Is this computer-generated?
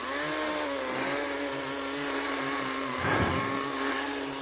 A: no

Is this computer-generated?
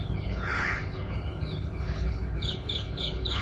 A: yes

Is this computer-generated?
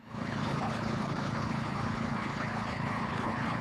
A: yes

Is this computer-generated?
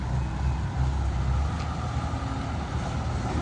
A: no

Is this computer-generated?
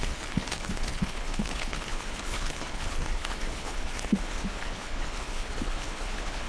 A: yes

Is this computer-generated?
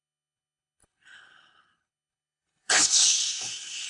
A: yes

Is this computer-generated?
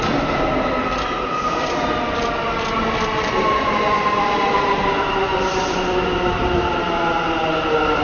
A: no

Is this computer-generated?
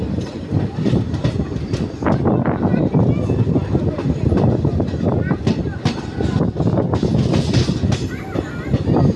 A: no